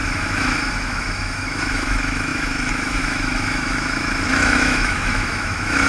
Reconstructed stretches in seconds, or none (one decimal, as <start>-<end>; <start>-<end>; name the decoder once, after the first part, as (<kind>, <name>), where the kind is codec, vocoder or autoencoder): 0.0-5.9 (autoencoder, DAC-VAE)